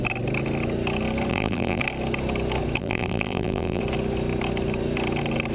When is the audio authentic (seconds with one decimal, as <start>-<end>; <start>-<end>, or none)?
0.0-1.3; 1.8-2.8; 3.8-5.5